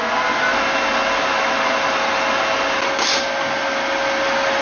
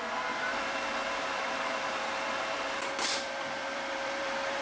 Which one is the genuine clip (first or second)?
first